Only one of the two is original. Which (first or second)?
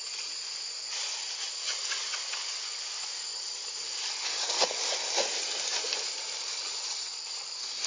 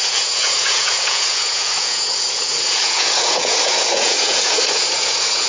first